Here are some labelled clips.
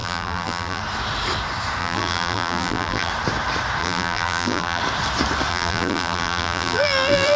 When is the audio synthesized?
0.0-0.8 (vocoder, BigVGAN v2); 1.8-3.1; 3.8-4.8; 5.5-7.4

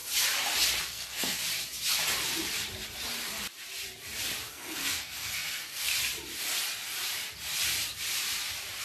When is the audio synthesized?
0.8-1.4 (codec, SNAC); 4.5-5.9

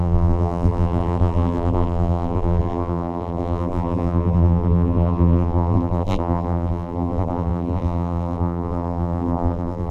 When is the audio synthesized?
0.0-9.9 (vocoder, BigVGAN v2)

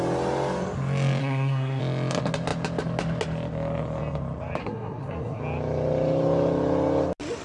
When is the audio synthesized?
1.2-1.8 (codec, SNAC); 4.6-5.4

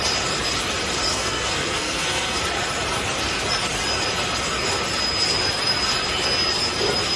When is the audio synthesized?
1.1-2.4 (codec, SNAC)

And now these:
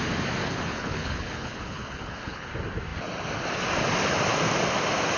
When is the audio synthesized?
0.4-2.5 (codec, HILCodec)

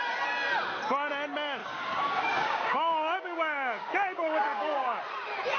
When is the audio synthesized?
1.6-5.0 (codec, DAC)